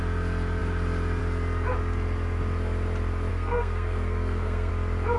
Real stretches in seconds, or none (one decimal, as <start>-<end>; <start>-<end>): 0.0-3.3; 4.7-5.2